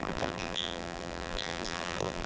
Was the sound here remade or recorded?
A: remade